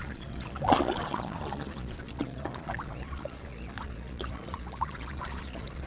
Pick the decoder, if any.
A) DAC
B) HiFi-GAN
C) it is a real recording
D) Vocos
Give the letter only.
D